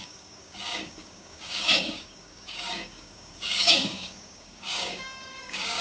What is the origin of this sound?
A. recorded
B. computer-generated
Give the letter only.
B